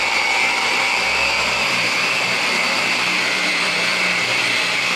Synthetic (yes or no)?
yes